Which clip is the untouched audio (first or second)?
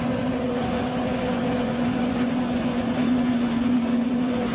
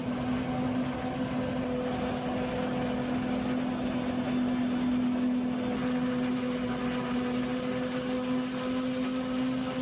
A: second